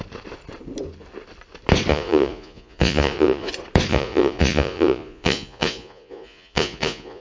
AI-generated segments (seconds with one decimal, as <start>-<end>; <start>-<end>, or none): 1.9-3.5; 3.9-7.2

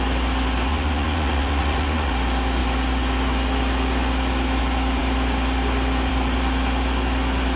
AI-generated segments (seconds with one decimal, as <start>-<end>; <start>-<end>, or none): 0.7-2.1

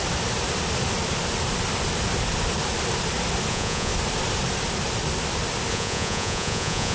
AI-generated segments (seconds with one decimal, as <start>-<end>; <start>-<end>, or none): 3.5-3.9; 5.7-6.9

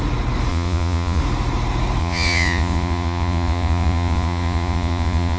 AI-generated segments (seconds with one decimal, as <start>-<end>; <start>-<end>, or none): 0.5-1.2; 2.0-5.4

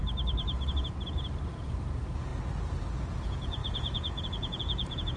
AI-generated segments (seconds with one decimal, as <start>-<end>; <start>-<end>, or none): 1.5-2.3; 3.0-5.2